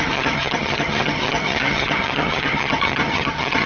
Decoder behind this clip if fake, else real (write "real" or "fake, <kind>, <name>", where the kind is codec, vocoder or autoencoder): fake, vocoder, HiFi-GAN